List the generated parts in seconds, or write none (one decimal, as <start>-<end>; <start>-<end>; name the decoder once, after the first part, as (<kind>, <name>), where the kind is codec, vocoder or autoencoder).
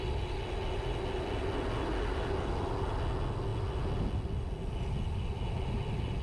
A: none